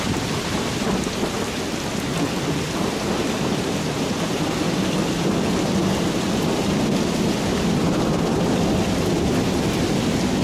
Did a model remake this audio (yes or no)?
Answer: no